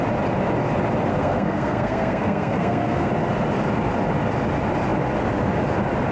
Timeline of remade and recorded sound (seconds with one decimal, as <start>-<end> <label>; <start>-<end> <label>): 0.0-1.1 recorded; 1.1-3.1 remade; 3.1-6.1 recorded